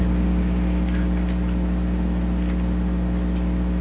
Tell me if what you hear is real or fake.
real